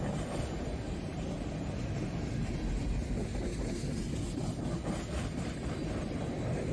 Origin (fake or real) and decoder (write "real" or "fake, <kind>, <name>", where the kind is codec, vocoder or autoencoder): real